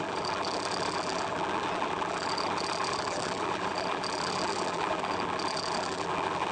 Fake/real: fake